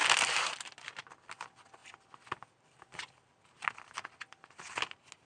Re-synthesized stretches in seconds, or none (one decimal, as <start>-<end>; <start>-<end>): none